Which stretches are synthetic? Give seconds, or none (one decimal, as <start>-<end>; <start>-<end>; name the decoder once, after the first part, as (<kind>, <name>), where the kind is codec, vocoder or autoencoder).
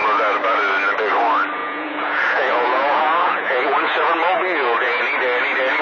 1.6-5.0 (vocoder, Vocos)